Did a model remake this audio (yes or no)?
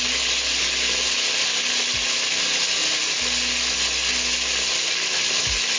no